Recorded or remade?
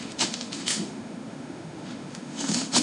remade